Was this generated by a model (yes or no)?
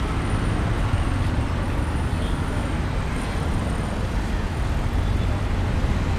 no